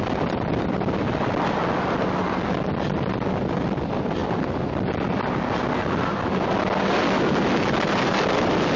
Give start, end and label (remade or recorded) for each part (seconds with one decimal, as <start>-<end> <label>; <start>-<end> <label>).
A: 0.0-1.6 remade; 1.6-3.6 recorded; 3.6-4.2 remade; 4.2-5.7 recorded; 5.7-8.8 remade